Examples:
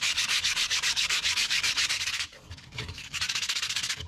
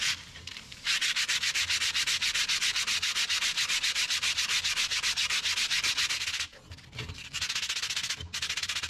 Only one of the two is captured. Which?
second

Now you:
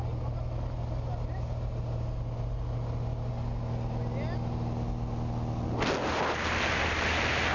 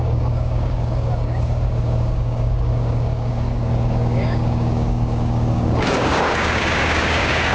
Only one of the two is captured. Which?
first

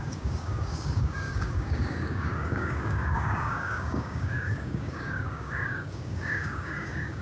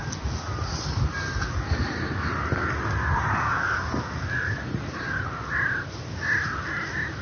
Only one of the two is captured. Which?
second